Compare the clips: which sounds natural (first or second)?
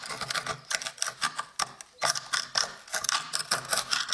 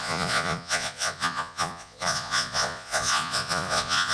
first